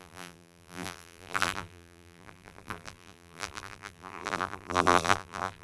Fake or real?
fake